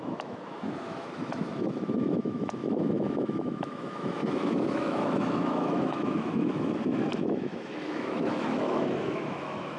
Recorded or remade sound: remade